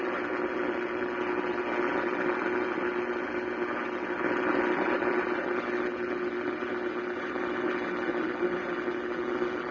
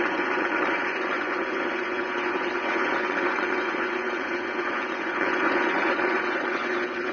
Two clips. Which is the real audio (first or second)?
first